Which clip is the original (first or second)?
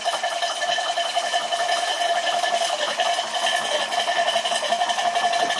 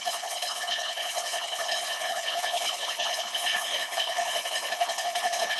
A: first